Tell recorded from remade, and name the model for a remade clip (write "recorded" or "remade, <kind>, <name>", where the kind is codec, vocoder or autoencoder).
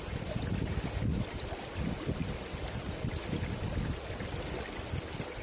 recorded